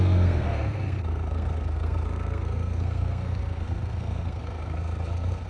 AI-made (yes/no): yes